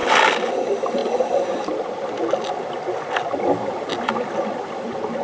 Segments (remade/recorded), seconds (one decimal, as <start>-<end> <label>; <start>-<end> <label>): 0.0-0.5 recorded; 0.5-1.0 remade; 1.0-4.1 recorded; 4.1-5.2 remade